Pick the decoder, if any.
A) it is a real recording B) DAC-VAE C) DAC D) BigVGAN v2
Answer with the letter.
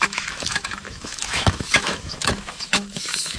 B